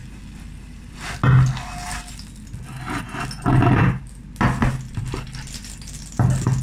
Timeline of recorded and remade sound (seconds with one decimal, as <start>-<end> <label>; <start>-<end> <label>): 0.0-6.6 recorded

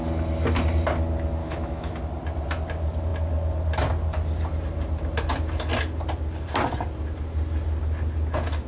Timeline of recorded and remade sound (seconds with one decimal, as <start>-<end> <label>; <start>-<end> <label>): 0.0-1.4 recorded; 1.4-2.0 remade; 2.0-8.7 recorded

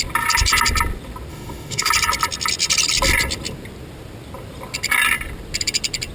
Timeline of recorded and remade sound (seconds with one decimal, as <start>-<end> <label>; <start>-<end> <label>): 0.0-1.3 recorded; 1.3-1.9 remade; 1.9-6.1 recorded

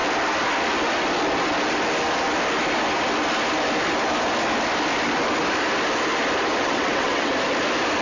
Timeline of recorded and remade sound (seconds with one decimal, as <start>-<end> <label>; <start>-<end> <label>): 0.0-6.6 recorded; 6.6-7.3 remade; 7.3-8.0 recorded

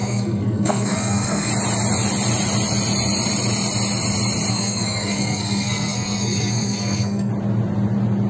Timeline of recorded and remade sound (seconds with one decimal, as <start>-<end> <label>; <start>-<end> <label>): 0.0-1.5 remade; 1.5-4.5 recorded; 4.5-7.3 remade; 7.3-8.3 recorded

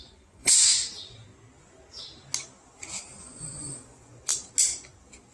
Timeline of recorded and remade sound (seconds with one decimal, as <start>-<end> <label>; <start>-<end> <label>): 0.0-0.7 remade; 0.7-3.1 recorded; 3.1-4.3 remade; 4.3-5.3 recorded

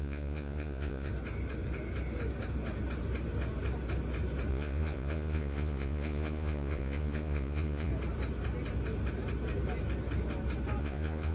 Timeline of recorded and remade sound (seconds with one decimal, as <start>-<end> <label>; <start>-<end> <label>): 0.0-1.1 remade; 1.1-4.5 recorded; 4.5-7.9 remade; 7.9-10.8 recorded; 10.8-11.3 remade

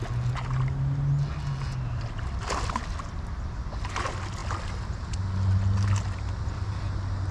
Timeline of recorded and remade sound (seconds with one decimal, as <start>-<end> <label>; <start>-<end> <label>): 0.0-7.3 recorded